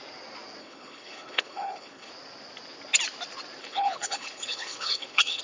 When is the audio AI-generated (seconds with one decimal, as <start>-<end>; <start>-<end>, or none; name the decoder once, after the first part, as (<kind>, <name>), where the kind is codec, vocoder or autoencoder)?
0.6-2.1 (codec, HILCodec); 3.6-5.4